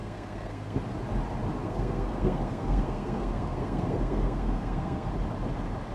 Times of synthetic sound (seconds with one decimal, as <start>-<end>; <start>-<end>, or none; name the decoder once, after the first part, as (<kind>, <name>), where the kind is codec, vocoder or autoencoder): 0.0-0.8 (codec, SNAC); 1.6-5.1